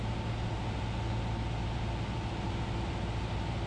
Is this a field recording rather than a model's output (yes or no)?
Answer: yes